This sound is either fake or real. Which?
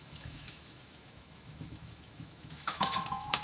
fake